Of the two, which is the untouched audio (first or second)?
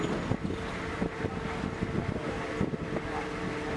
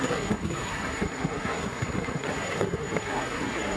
first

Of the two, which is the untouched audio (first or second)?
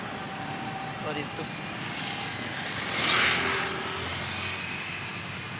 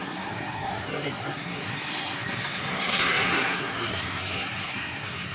first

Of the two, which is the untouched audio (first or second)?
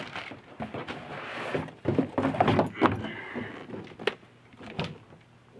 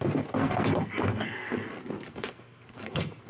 first